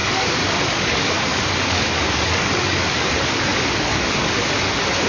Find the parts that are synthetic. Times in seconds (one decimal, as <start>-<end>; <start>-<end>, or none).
0.0-3.1; 3.5-4.3